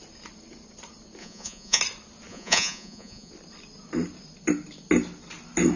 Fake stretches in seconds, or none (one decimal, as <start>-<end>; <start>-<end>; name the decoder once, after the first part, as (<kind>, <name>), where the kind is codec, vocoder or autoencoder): 1.2-1.8 (vocoder, Vocos); 2.3-3.3